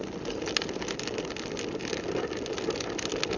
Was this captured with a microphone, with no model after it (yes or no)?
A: yes